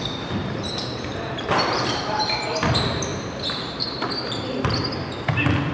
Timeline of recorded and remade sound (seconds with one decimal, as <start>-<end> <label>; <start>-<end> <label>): 0.0-0.4 recorded; 0.4-2.5 remade; 2.5-3.1 recorded; 3.1-4.1 remade; 4.1-5.7 recorded